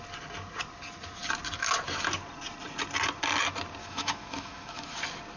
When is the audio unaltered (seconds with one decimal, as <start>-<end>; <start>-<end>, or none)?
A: 0.0-3.8; 5.0-5.4